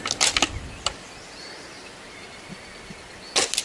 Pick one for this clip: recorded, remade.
recorded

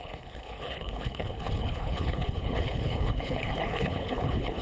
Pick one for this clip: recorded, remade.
remade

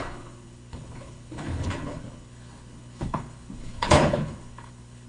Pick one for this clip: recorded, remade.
remade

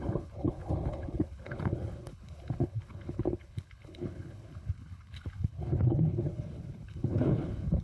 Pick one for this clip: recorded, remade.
remade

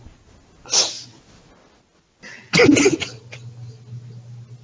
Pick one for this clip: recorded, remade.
recorded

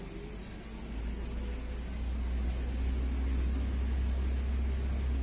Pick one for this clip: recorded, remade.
recorded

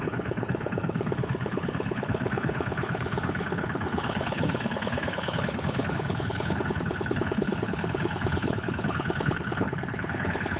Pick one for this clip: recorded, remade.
remade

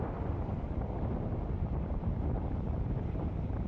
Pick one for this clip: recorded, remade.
recorded